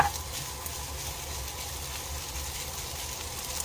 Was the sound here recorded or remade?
recorded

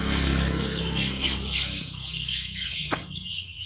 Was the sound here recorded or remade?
remade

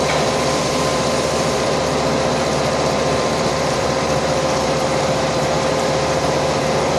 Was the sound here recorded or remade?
remade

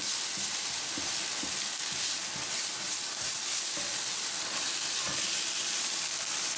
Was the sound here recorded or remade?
remade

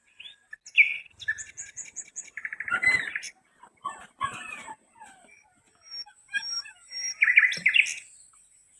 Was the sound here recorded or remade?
recorded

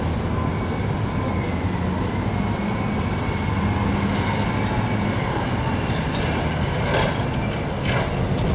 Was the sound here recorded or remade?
recorded